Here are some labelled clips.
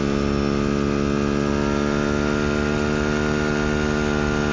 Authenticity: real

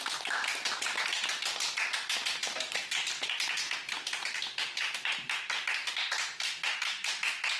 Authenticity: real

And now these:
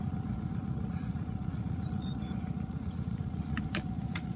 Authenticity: fake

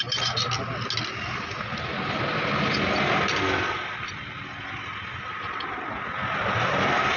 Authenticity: real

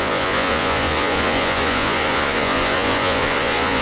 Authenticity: fake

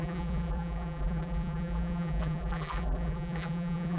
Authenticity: fake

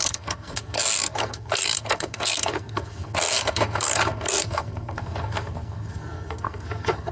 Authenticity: fake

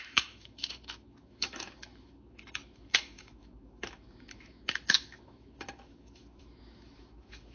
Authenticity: fake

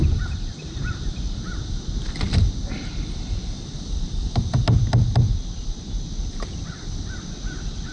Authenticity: real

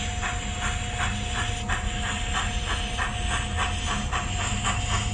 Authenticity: real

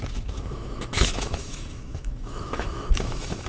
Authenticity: fake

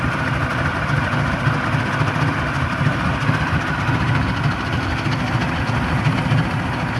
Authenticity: real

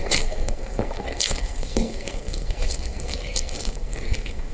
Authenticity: fake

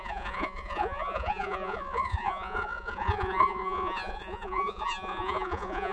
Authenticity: fake